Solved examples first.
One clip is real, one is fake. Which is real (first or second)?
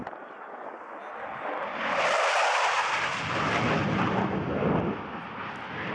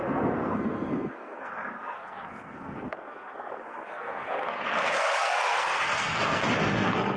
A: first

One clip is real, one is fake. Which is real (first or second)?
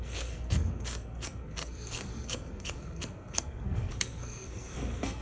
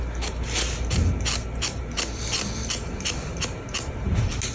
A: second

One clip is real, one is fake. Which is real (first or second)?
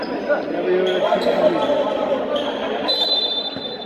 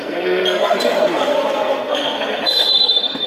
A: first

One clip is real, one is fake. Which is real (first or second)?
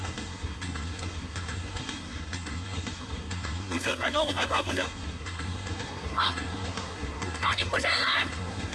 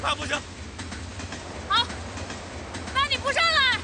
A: second